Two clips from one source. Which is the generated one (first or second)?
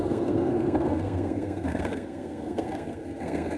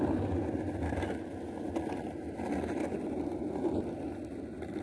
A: first